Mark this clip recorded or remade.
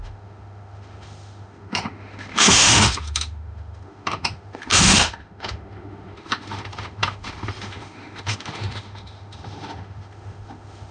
remade